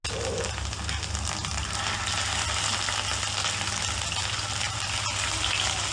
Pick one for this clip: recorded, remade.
recorded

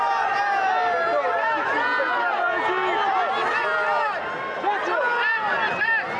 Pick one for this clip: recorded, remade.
recorded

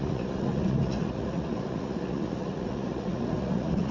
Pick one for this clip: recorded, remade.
remade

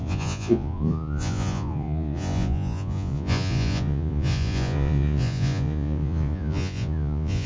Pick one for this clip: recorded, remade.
remade